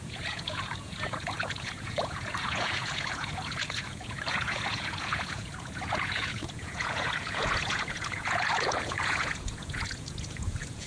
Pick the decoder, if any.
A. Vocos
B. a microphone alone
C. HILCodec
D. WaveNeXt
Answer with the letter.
A